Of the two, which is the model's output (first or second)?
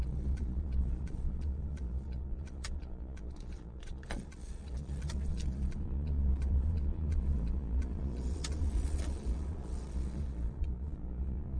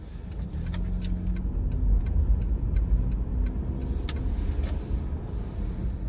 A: first